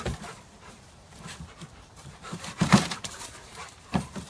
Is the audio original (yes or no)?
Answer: no